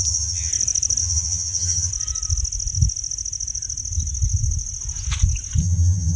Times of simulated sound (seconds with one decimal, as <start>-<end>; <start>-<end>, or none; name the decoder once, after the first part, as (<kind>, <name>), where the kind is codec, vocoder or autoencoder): 0.0-0.5 (vocoder, HiFi-GAN); 1.0-1.9; 5.6-6.2